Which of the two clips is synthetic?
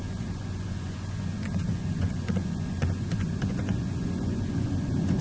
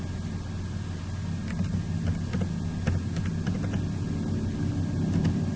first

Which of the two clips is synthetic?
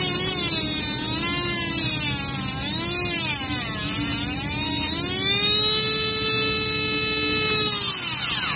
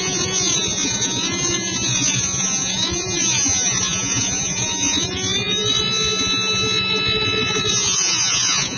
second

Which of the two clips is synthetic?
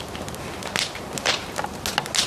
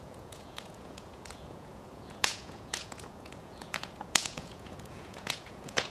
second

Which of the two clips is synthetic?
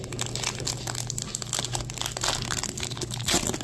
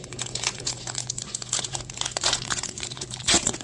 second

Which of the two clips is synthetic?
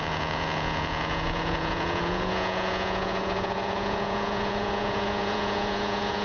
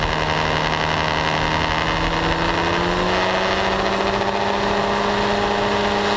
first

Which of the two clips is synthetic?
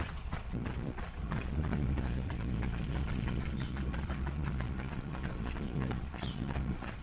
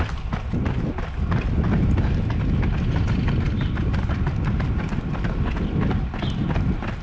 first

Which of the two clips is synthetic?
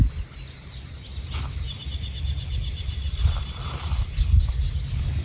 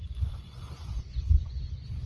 second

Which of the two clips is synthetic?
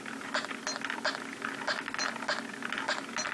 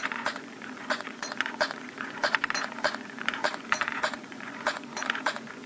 second